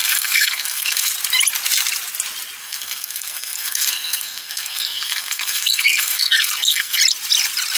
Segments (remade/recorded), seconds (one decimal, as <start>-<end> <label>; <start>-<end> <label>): 0.0-1.1 remade; 1.1-2.6 recorded; 2.6-7.0 remade; 7.0-7.8 recorded

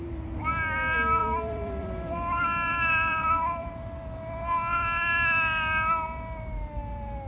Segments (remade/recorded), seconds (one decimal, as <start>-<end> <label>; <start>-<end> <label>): 0.0-1.2 recorded; 1.2-3.7 remade; 3.7-7.3 recorded

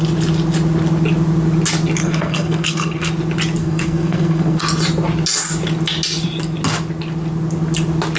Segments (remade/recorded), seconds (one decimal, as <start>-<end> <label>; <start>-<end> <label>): 0.0-2.0 recorded; 2.0-3.1 remade; 3.1-3.6 recorded; 3.6-4.6 remade; 4.6-8.2 recorded

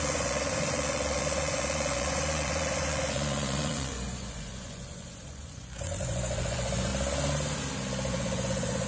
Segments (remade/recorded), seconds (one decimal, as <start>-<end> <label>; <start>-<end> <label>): 0.0-6.9 remade; 6.9-8.1 recorded; 8.1-8.9 remade